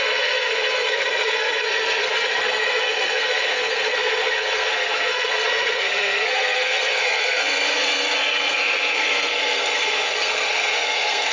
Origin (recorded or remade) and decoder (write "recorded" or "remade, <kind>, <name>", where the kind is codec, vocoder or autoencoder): remade, codec, SNAC